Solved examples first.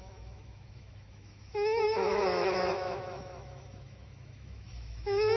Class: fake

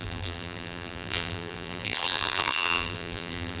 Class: fake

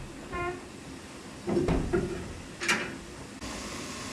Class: real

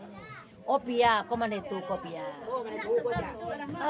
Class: real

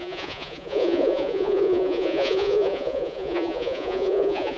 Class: fake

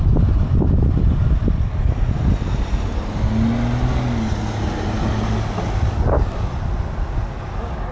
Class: real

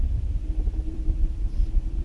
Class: fake